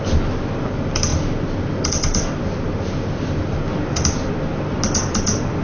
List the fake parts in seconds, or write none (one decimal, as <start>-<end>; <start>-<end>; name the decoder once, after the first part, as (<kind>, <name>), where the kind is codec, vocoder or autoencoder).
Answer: none